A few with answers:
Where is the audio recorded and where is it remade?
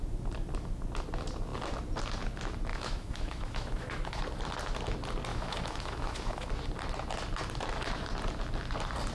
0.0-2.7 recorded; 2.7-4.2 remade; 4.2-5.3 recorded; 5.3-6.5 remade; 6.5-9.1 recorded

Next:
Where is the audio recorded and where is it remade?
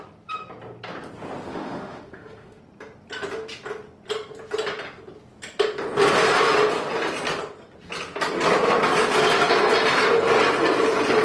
0.0-1.5 recorded; 1.5-2.6 remade; 2.6-11.2 recorded